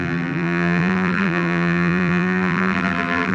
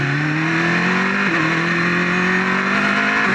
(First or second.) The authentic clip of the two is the second